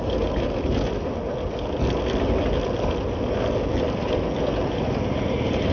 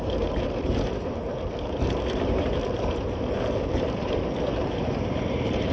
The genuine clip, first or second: first